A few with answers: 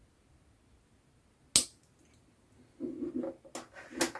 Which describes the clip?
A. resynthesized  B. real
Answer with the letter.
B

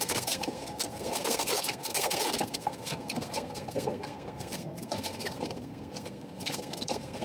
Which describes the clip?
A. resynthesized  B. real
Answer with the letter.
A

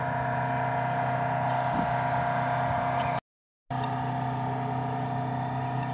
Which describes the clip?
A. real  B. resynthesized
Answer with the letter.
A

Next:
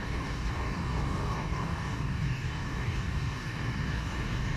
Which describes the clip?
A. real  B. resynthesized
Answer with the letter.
B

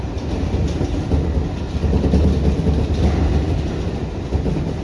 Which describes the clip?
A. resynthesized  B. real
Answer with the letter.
B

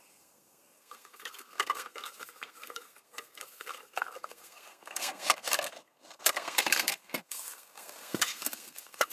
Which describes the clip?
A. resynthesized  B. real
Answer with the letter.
A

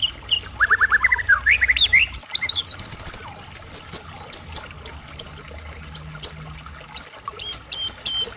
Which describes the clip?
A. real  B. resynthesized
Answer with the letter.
A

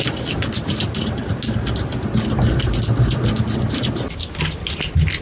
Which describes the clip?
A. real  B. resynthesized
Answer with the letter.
A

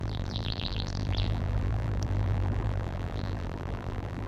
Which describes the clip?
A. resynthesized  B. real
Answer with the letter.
A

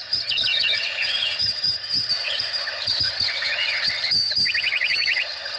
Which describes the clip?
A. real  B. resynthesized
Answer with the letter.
B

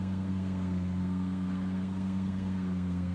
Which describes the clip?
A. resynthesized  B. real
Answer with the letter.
A